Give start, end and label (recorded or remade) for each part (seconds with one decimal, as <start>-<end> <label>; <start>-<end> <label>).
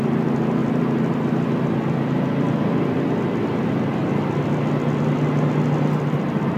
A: 0.0-6.6 recorded